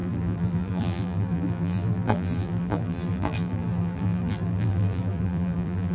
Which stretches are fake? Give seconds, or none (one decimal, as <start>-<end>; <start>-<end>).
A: 0.0-5.9